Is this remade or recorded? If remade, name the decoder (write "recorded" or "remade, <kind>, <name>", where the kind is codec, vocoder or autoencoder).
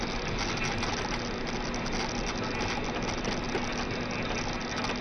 recorded